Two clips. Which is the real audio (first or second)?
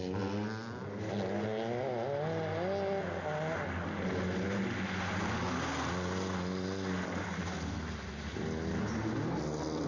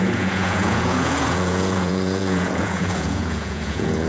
first